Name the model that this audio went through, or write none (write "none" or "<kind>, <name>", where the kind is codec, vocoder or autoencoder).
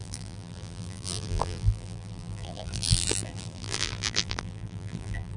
vocoder, BigVGAN v2